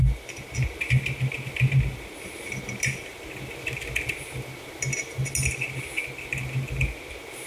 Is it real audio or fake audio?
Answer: real